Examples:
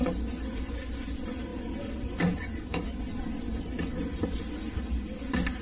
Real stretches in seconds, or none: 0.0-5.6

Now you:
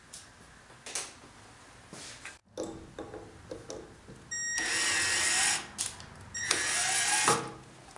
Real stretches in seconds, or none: 0.0-8.0

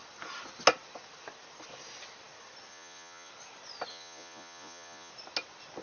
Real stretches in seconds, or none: 0.0-2.7; 3.3-3.9; 5.1-5.8

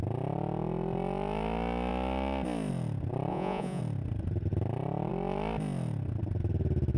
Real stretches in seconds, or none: 0.0-3.3; 3.8-7.0

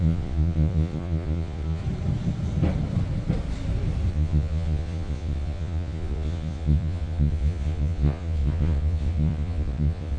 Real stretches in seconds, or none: 1.8-4.1

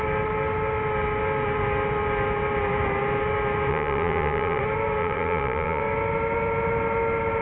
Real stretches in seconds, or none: 0.0-3.7; 4.6-5.0; 5.8-7.4

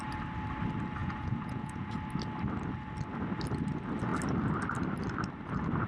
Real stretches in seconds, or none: 0.0-1.0; 1.9-5.9